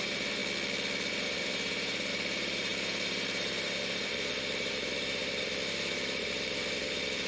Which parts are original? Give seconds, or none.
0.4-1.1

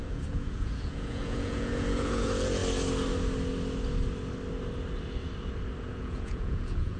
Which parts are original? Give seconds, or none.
2.6-5.8